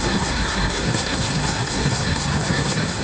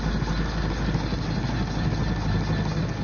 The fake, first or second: first